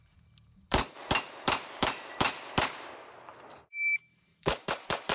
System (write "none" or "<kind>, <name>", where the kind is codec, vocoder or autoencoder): vocoder, BigVGAN v2